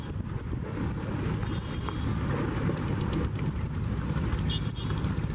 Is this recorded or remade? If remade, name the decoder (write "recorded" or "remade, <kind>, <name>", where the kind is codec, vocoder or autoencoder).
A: recorded